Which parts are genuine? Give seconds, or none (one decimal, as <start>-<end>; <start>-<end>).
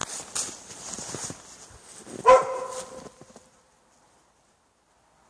0.0-5.3